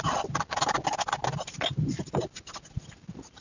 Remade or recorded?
recorded